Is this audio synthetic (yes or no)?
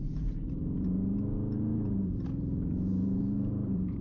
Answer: yes